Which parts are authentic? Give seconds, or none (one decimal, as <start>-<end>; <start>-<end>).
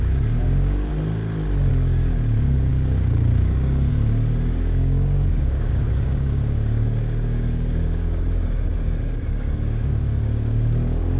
0.9-1.7